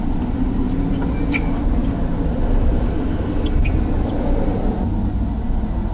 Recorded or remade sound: recorded